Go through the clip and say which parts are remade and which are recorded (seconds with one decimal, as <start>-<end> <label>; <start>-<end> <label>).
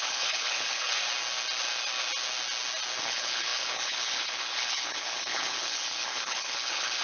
0.0-1.0 remade; 1.0-3.0 recorded; 3.0-7.0 remade